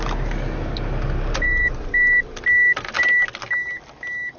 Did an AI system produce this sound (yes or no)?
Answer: no